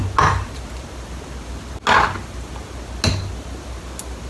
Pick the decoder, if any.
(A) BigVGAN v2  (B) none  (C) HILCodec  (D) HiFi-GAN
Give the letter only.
B